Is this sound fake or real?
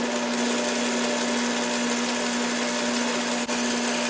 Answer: real